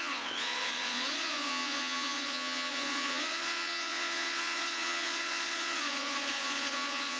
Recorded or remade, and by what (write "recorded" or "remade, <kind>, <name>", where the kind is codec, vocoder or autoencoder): remade, vocoder, Vocos